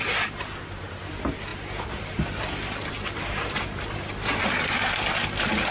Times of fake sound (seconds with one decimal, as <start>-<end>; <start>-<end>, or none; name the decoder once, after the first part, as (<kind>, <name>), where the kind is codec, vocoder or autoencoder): none

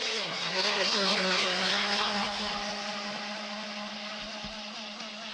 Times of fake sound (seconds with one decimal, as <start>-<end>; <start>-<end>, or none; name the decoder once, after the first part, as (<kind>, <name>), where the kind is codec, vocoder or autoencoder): 0.0-2.5 (codec, SNAC)